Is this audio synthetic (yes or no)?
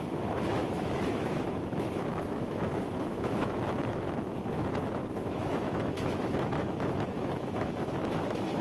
yes